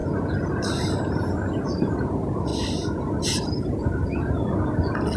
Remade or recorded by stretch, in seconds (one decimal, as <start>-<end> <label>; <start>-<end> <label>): 0.0-0.6 recorded; 0.6-2.5 remade; 2.5-3.2 recorded; 3.2-4.1 remade; 4.1-5.2 recorded